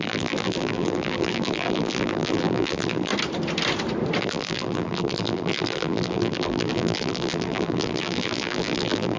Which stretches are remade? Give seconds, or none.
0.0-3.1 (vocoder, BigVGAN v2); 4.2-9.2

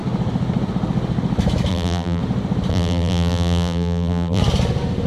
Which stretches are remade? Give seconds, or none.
1.7-2.2 (vocoder, BigVGAN v2); 2.7-4.4

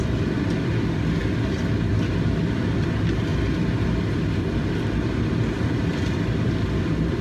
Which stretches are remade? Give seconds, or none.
0.0-1.2 (vocoder, BigVGAN v2); 1.9-3.3; 4.9-7.2

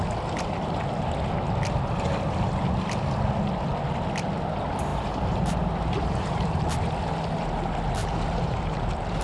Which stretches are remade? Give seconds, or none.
4.9-6.7 (vocoder, BigVGAN v2); 8.0-9.2

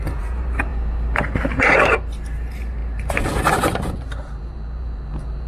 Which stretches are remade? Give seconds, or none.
0.0-0.7 (vocoder, BigVGAN v2); 1.2-5.5

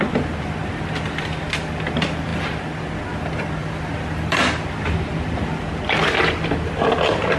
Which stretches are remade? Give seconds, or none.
3.6-4.4 (vocoder, BigVGAN v2)

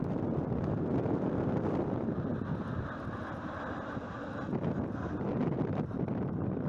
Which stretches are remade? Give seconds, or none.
0.0-2.3 (vocoder, BigVGAN v2); 6.3-6.7